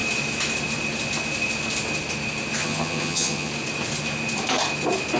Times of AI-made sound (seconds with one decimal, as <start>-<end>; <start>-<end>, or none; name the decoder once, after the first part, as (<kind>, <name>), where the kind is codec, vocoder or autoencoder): 2.6-3.5 (vocoder, HiFi-GAN)